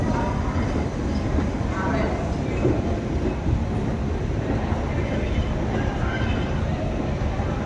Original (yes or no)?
yes